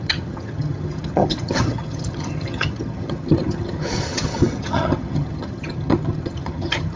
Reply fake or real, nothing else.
fake